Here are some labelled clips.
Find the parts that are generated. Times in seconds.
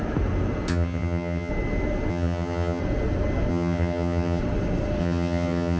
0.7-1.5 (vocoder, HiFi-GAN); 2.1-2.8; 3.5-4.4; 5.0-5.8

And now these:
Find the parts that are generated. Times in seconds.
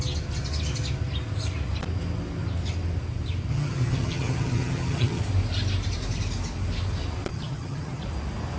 3.5-5.2 (vocoder, HiFi-GAN); 7.3-8.0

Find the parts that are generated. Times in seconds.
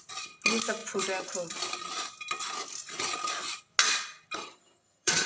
4.4-5.3 (vocoder, HiFi-GAN)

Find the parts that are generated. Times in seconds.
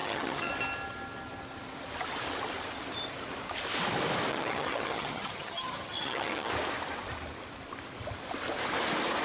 0.0-0.5 (vocoder, HiFi-GAN); 4.3-6.5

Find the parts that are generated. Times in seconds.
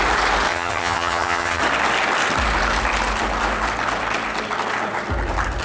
0.5-1.6 (vocoder, HiFi-GAN)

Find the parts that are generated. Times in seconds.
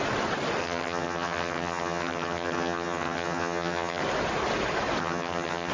0.6-4.0 (vocoder, HiFi-GAN); 5.0-5.7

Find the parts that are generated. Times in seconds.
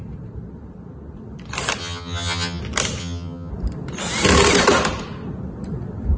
1.8-2.6 (vocoder, HiFi-GAN); 3.0-3.5